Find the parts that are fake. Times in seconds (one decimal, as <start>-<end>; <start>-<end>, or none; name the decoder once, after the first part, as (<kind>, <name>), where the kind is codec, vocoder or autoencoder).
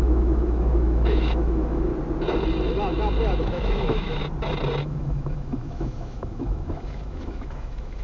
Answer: 0.0-1.9 (autoencoder, DAC-VAE); 3.4-4.2; 4.8-8.0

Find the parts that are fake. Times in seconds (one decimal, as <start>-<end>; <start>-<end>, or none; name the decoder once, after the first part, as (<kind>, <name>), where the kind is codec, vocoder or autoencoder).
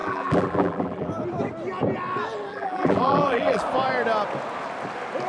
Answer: 0.0-1.1 (vocoder, BigVGAN v2); 2.5-3.6